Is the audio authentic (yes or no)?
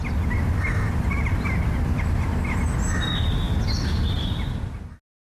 yes